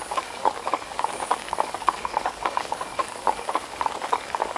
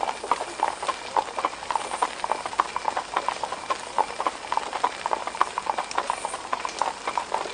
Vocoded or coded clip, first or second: first